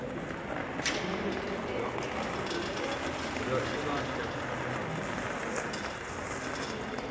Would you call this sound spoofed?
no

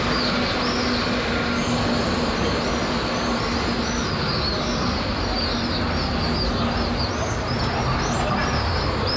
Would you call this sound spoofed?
no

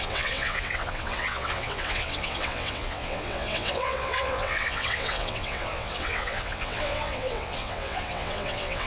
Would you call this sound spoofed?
yes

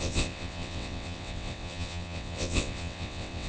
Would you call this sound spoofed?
yes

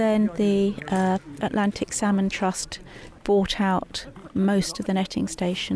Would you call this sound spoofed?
no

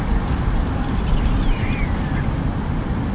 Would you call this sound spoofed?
no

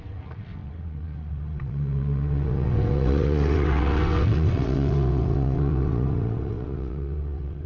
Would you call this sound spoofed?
yes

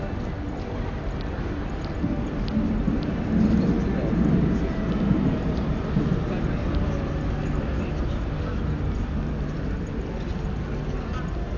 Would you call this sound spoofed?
no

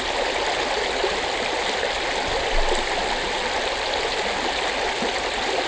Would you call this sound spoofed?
no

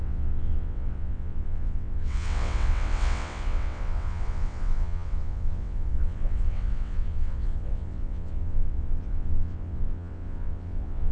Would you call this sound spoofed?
yes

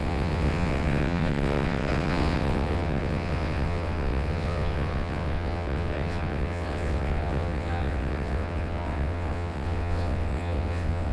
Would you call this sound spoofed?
yes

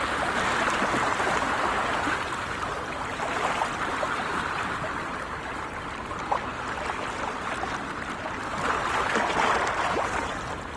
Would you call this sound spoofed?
no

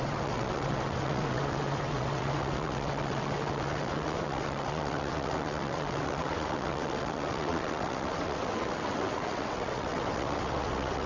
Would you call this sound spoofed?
yes